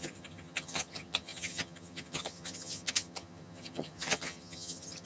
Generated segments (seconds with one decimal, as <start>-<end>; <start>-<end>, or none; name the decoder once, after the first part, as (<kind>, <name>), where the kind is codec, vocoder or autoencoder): 0.0-5.1 (vocoder, HiFi-GAN)